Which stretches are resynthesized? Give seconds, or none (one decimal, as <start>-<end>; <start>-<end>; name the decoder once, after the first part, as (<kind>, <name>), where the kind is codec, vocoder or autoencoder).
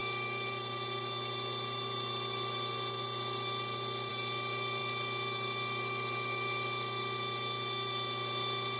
none